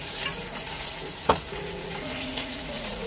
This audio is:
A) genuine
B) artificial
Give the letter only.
B